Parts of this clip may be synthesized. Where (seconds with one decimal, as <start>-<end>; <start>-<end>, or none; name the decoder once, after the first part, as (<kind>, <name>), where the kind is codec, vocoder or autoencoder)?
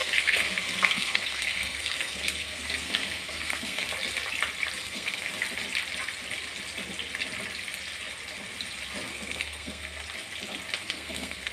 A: 0.0-3.9 (codec, SNAC); 4.8-5.3; 9.1-10.0; 10.8-11.5